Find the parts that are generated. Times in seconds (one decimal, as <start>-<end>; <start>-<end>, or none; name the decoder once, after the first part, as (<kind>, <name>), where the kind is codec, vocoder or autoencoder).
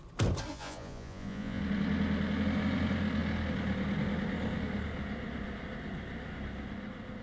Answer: 0.5-1.6 (vocoder, Vocos)